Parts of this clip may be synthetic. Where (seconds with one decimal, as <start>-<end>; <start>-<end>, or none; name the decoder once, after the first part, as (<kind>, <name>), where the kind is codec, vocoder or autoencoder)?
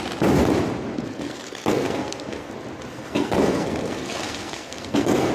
0.9-2.5 (codec, SNAC); 2.9-5.3